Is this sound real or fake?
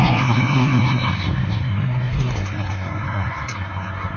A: fake